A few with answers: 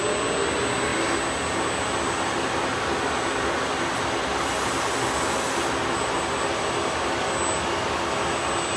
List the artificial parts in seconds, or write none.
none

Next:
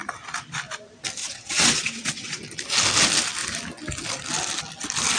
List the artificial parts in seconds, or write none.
1.2-2.4 (vocoder, WaveNeXt)

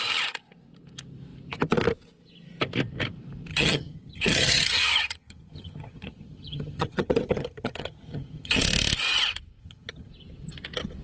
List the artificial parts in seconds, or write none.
3.5-8.6 (vocoder, HiFi-GAN); 9.6-10.1

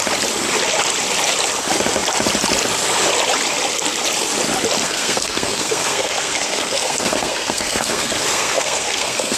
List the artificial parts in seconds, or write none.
4.8-9.4 (codec, SNAC)

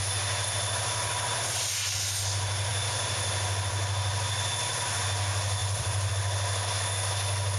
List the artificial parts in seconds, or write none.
5.6-6.1 (vocoder, BigVGAN v2)

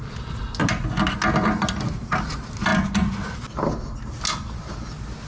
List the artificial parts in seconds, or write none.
none

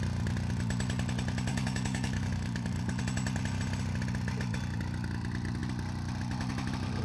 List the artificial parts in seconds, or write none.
1.5-3.0 (codec, DAC)